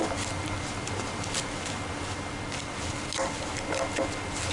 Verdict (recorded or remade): recorded